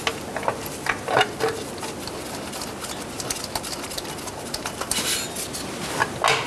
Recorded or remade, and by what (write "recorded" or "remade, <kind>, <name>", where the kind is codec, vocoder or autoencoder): recorded